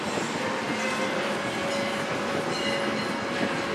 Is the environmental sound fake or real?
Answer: real